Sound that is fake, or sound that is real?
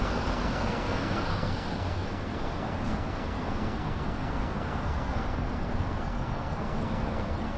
fake